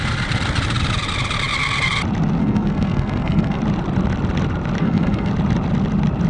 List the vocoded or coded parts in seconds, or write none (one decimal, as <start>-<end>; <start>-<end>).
2.4-3.6; 4.8-5.3